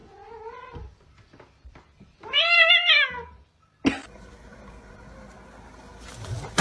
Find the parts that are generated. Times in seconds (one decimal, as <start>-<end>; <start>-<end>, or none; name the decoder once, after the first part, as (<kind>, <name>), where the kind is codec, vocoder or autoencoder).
none